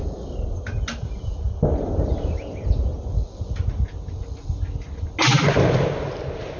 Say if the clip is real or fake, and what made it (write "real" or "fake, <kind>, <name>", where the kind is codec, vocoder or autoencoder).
real